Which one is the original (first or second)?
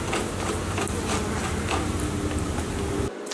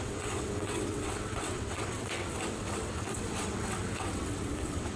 first